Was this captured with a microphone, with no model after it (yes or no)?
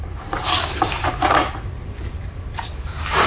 no